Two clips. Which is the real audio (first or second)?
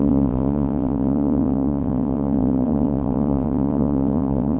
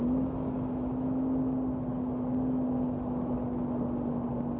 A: second